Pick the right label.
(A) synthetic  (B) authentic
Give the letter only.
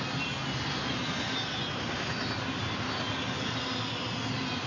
B